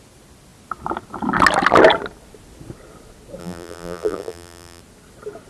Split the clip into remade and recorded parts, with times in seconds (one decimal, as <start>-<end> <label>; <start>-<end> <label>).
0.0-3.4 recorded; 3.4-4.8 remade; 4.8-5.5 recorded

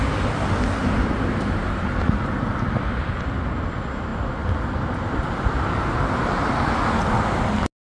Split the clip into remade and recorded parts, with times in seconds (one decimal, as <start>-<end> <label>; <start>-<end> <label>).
0.0-0.8 recorded; 0.8-2.5 remade; 2.5-7.9 recorded

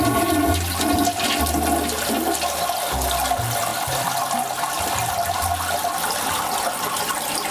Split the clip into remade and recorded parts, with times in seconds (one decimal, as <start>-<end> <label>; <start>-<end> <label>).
0.0-7.5 recorded

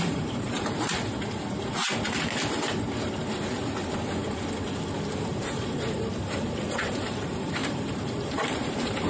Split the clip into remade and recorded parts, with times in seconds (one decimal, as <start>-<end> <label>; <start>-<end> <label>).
0.0-1.9 remade; 1.9-5.3 recorded; 5.3-9.1 remade

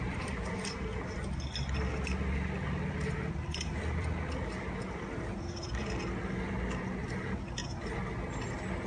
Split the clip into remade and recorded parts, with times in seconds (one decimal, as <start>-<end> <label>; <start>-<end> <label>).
0.0-0.9 remade; 0.9-3.3 recorded; 3.3-7.6 remade; 7.6-8.9 recorded

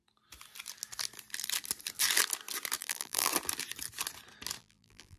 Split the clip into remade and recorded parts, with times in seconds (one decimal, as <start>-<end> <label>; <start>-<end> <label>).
0.0-2.8 recorded; 2.8-3.3 remade; 3.3-4.6 recorded; 4.6-5.2 remade

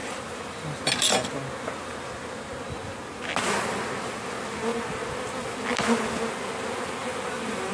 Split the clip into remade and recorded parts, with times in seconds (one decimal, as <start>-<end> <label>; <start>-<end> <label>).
0.0-0.8 remade; 0.8-7.0 recorded; 7.0-7.7 remade